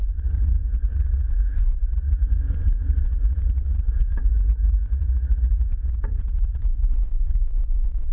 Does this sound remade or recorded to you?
remade